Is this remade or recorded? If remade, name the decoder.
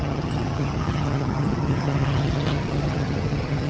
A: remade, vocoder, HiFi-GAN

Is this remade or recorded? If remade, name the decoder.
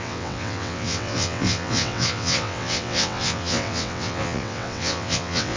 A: remade, vocoder, WaveNeXt